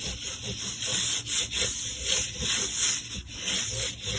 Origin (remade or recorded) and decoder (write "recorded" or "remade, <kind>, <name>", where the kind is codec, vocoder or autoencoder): recorded